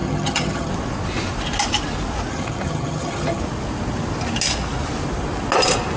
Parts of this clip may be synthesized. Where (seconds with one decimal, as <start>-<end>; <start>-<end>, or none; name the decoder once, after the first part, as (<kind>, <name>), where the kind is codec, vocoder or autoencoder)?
0.0-0.7 (vocoder, HiFi-GAN); 2.3-3.4